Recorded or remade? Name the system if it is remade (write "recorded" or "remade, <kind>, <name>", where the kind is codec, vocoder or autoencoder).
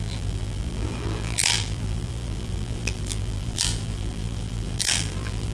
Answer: remade, vocoder, BigVGAN v2